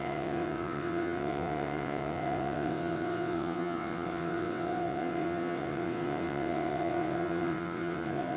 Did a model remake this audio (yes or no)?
yes